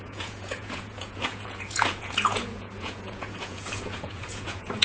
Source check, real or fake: fake